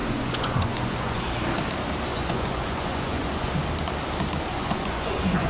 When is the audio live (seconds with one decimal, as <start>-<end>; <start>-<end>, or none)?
1.2-2.1; 3.5-4.5